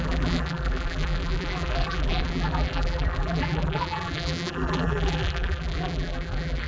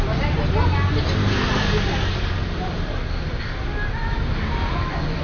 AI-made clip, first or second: first